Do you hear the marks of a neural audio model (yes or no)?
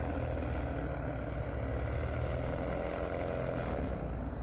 no